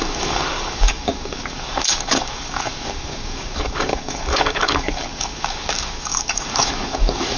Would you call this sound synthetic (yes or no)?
yes